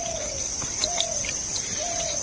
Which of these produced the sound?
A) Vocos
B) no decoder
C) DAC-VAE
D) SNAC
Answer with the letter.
B